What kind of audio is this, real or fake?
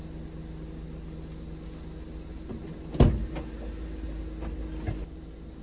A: real